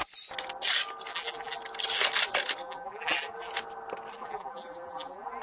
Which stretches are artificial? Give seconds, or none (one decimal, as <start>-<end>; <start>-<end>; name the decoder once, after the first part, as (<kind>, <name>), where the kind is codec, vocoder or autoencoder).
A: 1.1-1.6 (vocoder, BigVGAN v2); 2.6-3.5; 4.1-5.4